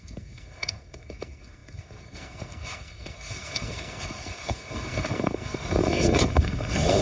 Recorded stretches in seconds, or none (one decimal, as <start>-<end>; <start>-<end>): none